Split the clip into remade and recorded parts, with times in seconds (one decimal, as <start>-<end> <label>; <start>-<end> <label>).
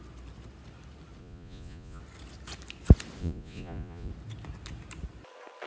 0.0-1.2 recorded; 1.2-2.0 remade; 2.0-3.2 recorded; 3.2-4.1 remade; 4.1-5.7 recorded